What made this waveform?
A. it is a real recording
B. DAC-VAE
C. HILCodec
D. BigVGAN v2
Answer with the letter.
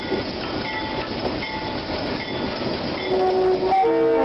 A